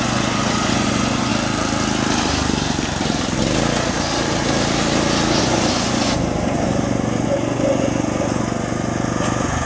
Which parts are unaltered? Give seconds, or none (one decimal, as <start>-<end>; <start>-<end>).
1.3-5.4